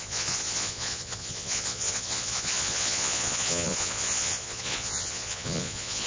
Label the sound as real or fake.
fake